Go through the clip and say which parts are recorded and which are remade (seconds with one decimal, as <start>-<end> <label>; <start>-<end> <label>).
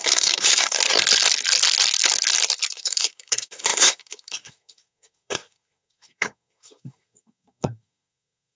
0.0-0.8 remade; 0.8-2.7 recorded; 2.7-8.6 remade